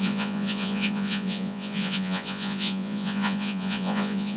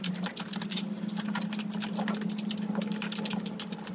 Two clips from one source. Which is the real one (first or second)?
second